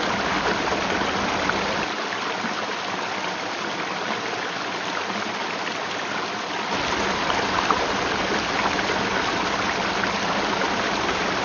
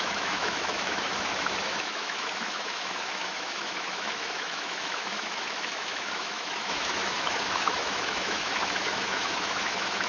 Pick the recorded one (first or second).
first